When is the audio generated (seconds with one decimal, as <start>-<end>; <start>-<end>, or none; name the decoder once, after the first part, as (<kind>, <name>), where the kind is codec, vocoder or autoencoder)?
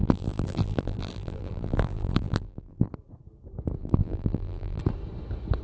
0.0-2.9 (vocoder, BigVGAN v2); 3.8-4.8